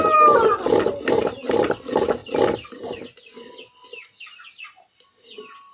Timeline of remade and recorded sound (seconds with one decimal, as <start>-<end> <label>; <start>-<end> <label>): 0.0-5.7 recorded